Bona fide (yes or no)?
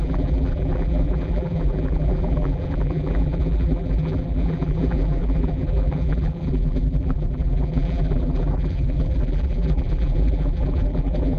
no